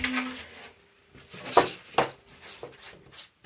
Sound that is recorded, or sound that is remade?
recorded